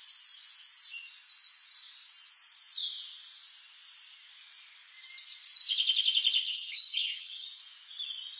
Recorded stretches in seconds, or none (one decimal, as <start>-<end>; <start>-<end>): 0.0-6.4; 7.6-8.4